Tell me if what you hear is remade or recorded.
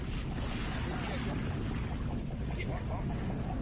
recorded